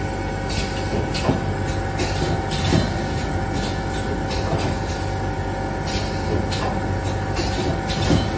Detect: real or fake real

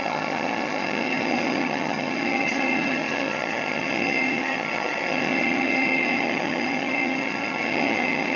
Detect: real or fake fake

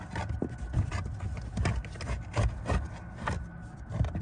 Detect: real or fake real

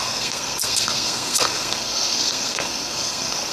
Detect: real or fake fake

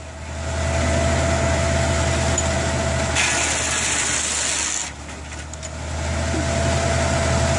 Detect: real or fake real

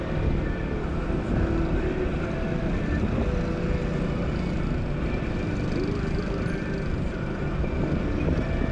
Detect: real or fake real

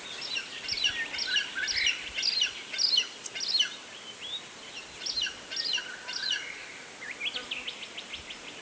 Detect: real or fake real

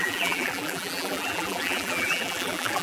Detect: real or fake fake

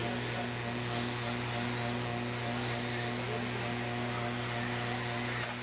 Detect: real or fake real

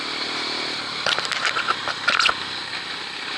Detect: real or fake fake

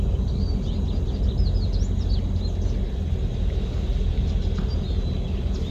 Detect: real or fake real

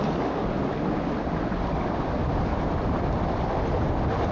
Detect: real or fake real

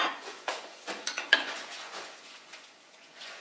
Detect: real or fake fake